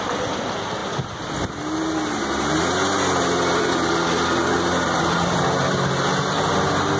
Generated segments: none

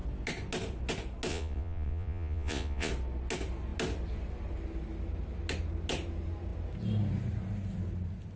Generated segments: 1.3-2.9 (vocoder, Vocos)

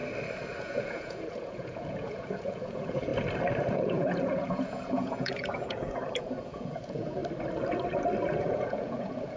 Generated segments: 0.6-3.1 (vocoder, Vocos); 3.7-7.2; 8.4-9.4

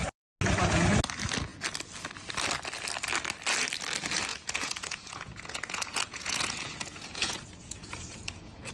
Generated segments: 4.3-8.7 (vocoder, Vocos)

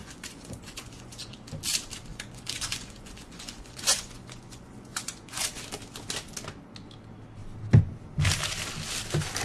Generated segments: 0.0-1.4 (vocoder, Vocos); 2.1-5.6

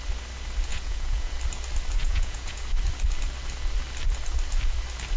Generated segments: 0.7-1.3 (vocoder, Vocos); 2.0-2.6

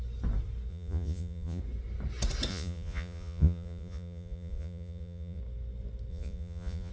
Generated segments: 0.7-1.6 (vocoder, Vocos); 2.5-5.4; 6.1-6.9

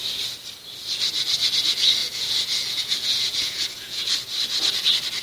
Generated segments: 2.0-4.1 (vocoder, Vocos)